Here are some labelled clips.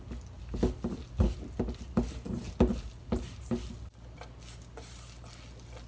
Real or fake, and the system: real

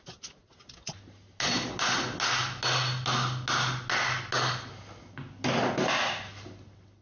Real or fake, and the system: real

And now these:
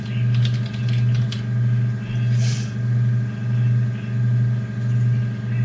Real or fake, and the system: real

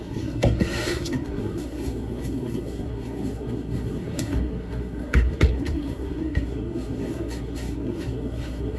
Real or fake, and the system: fake, codec, SNAC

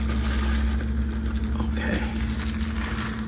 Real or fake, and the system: real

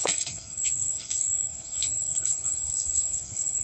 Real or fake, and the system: fake, codec, SNAC